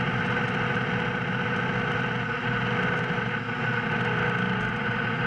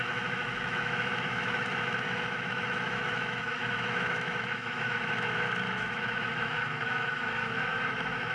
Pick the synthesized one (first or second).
second